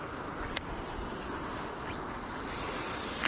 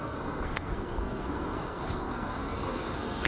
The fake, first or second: second